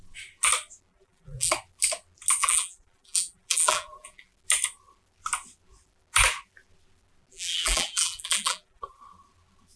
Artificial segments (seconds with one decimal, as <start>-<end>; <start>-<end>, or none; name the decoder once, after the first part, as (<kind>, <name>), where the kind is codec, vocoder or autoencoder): 0.9-1.5 (vocoder, BigVGAN v2); 2.4-4.3; 7.3-9.0